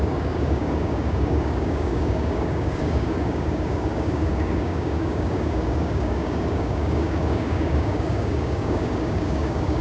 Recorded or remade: remade